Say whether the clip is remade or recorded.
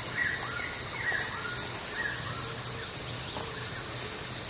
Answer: recorded